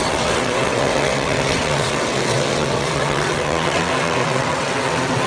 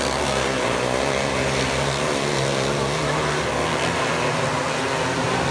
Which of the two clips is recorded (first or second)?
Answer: second